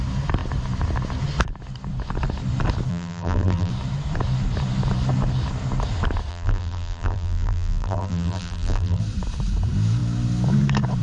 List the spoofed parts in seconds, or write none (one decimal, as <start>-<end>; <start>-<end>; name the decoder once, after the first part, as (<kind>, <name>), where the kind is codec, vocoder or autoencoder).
2.9-3.7 (vocoder, BigVGAN v2); 6.3-9.0